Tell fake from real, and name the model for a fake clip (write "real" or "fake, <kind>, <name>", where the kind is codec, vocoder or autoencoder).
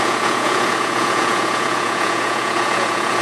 fake, vocoder, Vocos